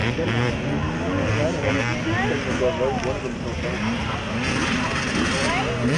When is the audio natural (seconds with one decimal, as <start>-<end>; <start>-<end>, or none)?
0.0-6.0